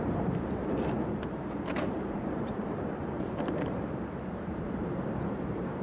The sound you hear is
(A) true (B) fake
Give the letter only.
B